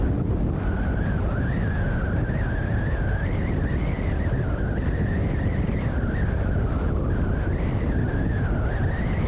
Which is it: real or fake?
real